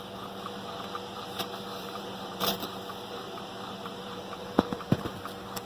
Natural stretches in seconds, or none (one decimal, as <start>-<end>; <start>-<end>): 0.0-1.7; 5.1-5.7